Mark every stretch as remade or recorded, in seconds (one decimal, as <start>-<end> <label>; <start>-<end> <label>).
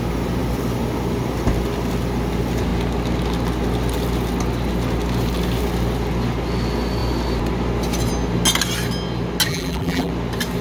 0.0-9.5 recorded; 9.5-10.1 remade; 10.1-10.6 recorded